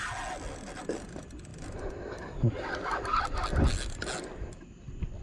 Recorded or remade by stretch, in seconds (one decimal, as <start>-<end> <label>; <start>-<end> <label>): 0.0-5.2 recorded